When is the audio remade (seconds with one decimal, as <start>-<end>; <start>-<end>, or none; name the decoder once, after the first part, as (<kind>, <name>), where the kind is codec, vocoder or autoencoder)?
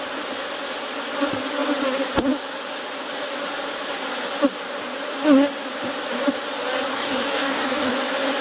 6.9-7.9 (codec, DAC)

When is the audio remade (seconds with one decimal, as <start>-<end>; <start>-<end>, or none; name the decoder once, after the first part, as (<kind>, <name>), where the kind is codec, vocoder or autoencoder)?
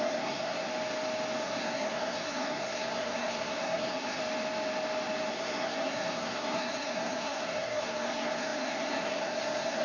0.0-0.7 (codec, SNAC); 1.4-4.2; 5.3-9.8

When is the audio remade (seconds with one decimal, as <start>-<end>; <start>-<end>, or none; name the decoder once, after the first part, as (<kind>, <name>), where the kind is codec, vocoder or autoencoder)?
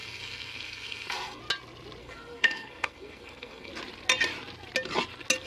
0.0-1.4 (codec, SNAC); 2.0-3.7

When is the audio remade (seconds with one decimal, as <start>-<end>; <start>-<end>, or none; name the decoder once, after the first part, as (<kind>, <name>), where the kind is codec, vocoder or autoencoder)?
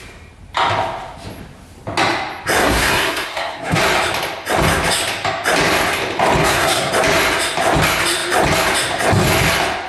2.6-3.8 (codec, SNAC); 6.4-6.9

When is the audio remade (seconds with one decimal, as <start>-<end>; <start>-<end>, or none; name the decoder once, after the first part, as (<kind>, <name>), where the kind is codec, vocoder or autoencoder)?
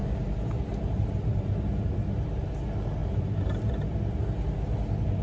0.0-2.5 (vocoder, BigVGAN v2); 3.0-3.7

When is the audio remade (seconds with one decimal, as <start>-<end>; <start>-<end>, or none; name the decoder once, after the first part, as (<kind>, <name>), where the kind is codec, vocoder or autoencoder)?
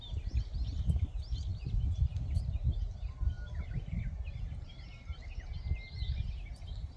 none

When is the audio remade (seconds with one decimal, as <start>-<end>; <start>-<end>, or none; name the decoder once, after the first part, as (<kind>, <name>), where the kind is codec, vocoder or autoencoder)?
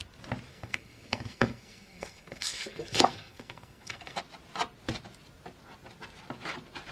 0.5-4.2 (codec, SNAC)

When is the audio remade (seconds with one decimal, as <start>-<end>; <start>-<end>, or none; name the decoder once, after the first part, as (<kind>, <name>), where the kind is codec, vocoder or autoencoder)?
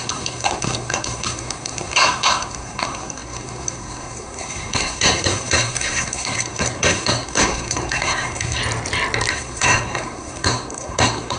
0.0-8.6 (codec, SNAC); 9.3-11.4